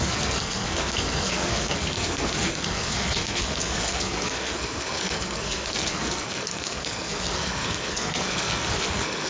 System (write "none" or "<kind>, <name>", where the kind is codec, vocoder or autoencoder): codec, SNAC